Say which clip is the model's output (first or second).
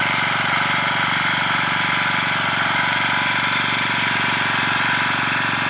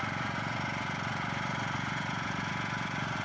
second